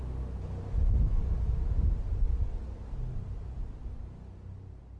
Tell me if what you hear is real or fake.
real